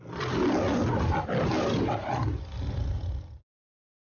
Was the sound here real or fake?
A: real